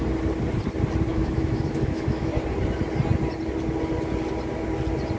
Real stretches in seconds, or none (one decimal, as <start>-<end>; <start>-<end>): 0.0-1.1; 2.3-5.2